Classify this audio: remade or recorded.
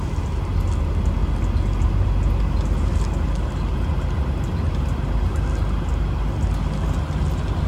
recorded